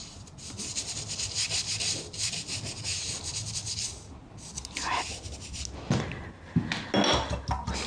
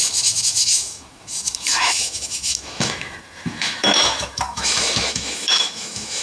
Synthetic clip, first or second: second